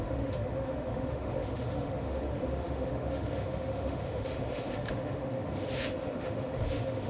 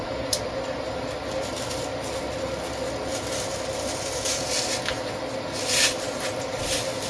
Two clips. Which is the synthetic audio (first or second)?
first